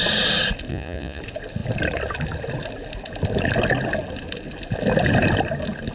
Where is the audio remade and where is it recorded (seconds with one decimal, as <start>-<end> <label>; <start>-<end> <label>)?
0.0-0.7 recorded; 0.7-1.2 remade; 1.2-5.9 recorded